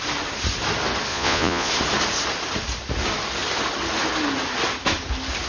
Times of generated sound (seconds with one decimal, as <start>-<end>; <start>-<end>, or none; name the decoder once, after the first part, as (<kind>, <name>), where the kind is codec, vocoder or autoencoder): 1.1-1.7 (vocoder, Vocos)